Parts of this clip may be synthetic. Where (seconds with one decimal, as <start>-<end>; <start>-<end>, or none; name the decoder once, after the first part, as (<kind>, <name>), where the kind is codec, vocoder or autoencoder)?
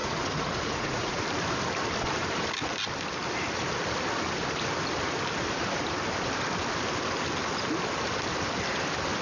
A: 0.0-1.2 (vocoder, Vocos)